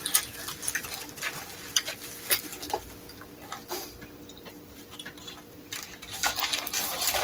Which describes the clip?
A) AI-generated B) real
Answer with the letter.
B